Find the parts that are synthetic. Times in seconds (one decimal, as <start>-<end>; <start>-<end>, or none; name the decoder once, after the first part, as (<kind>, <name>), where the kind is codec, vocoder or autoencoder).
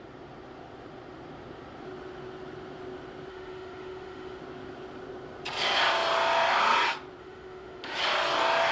3.3-4.4 (autoencoder, DAC-VAE); 7.2-8.0